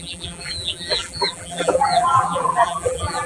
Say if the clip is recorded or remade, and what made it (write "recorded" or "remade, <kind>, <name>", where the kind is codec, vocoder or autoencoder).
remade, vocoder, BigVGAN v2